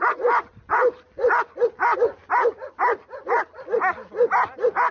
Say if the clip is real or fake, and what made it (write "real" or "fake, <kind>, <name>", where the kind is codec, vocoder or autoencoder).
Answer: real